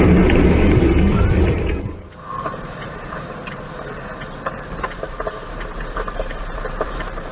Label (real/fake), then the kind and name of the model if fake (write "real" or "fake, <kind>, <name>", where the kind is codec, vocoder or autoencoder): fake, vocoder, BigVGAN v2